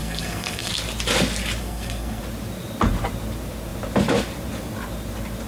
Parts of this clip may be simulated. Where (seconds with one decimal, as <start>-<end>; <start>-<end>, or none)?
0.0-0.7; 1.6-2.2